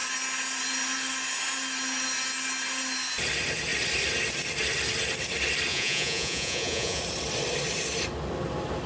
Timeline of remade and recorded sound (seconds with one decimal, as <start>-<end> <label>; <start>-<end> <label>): 0.0-5.7 recorded; 5.7-7.0 remade; 7.0-8.9 recorded